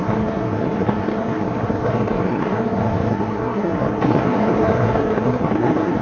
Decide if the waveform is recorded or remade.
remade